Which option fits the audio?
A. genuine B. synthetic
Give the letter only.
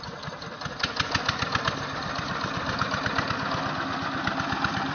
A